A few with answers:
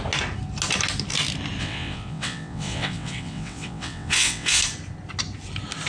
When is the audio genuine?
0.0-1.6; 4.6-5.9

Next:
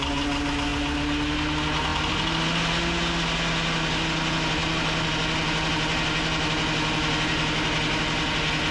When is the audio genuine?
0.0-8.7

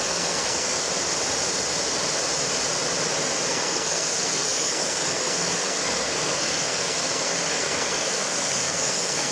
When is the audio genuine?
0.9-3.5